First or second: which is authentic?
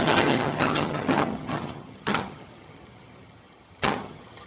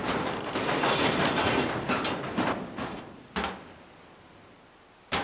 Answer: second